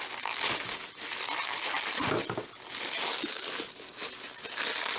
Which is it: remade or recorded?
recorded